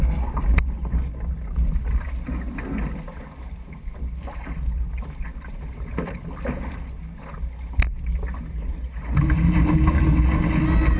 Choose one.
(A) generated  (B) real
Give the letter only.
B